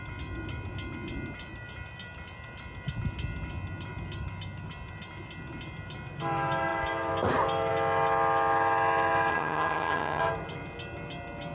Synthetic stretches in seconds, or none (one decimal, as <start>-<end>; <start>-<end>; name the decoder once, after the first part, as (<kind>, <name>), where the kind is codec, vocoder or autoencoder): 9.3-10.2 (vocoder, HiFi-GAN)